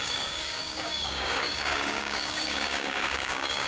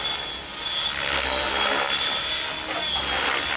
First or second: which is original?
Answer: second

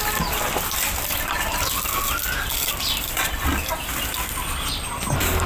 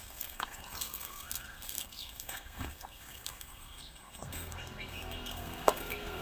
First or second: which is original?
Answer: first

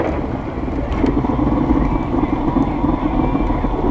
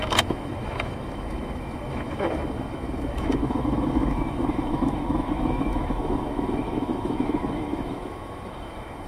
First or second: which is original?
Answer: first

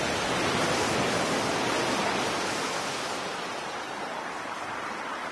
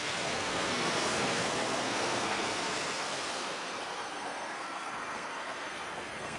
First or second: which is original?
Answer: first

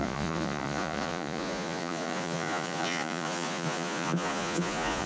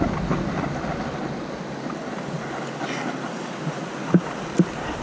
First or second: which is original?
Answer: second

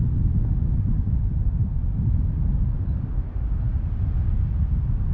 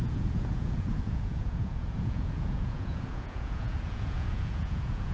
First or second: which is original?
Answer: first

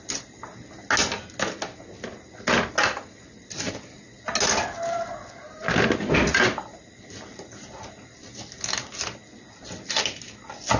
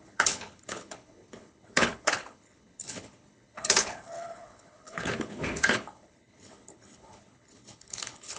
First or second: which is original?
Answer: first